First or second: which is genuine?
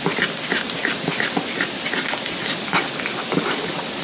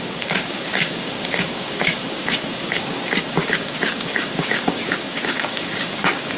first